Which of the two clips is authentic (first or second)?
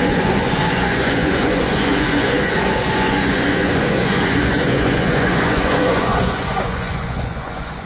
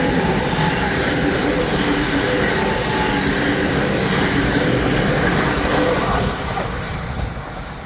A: second